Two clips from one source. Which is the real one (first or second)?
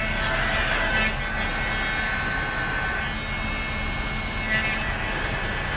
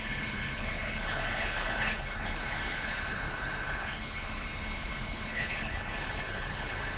first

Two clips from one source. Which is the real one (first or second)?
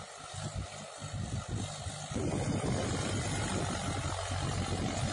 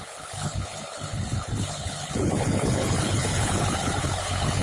first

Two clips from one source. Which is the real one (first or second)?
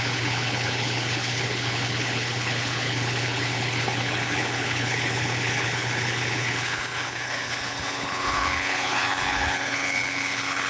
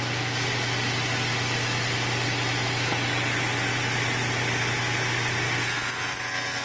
second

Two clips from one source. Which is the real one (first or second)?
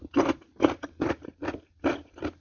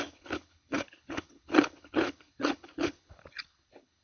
first